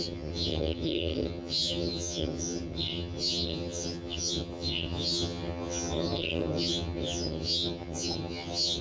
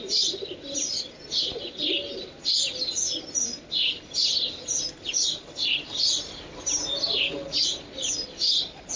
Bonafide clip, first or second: second